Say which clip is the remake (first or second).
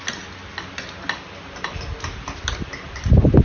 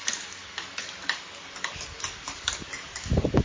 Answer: second